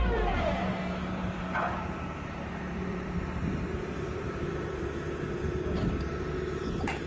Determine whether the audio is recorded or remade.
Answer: remade